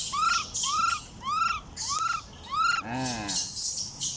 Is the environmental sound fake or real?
real